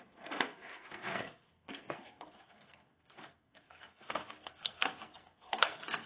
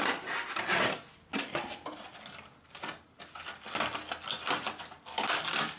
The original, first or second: second